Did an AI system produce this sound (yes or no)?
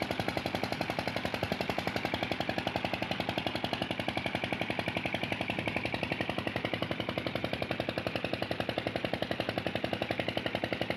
no